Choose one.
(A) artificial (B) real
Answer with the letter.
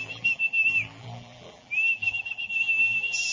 A